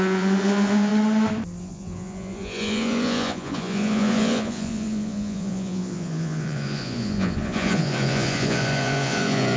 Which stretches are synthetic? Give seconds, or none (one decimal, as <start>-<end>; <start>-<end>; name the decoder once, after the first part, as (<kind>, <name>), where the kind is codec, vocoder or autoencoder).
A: 0.0-0.9 (vocoder, Vocos); 1.6-9.6